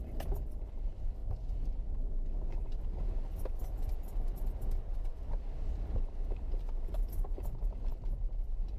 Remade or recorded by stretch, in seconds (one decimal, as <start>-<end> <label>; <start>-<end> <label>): 0.0-1.2 remade; 1.2-3.6 recorded; 3.6-5.1 remade; 5.1-6.3 recorded; 6.3-8.8 remade